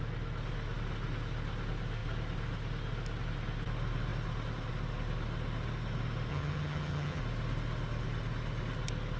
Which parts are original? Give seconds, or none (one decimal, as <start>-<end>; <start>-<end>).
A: 0.0-6.3; 7.2-9.2